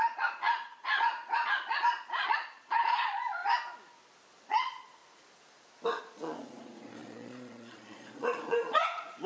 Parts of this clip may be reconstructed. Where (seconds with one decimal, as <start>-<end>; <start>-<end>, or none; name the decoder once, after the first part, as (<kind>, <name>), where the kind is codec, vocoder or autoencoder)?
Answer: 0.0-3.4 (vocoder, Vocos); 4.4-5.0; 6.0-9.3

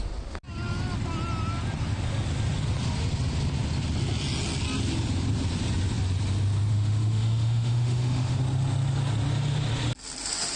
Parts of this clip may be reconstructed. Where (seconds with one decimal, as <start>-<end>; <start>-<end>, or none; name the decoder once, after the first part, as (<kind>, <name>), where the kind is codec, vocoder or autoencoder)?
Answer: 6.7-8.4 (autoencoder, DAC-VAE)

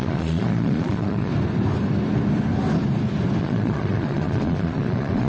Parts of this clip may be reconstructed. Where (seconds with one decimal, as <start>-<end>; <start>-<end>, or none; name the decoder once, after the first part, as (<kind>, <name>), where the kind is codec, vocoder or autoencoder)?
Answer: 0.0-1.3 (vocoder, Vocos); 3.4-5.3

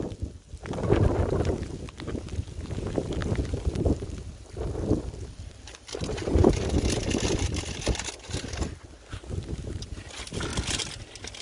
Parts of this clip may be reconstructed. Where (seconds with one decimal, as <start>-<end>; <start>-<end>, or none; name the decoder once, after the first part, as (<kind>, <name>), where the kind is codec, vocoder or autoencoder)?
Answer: 3.2-8.2 (vocoder, BigVGAN v2)

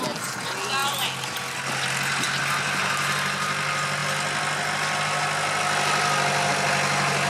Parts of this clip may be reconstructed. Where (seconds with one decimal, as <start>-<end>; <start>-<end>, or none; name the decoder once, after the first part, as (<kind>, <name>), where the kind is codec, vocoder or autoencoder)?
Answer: none

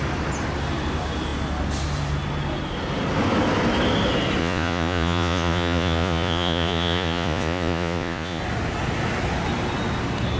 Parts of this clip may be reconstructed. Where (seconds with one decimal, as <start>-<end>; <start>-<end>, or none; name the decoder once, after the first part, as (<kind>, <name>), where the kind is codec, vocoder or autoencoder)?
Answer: 4.4-8.4 (vocoder, Vocos)